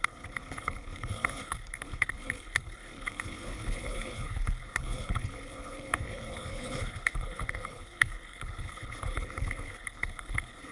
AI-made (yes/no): yes